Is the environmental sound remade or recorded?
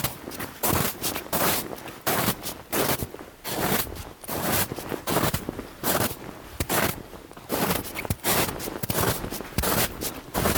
recorded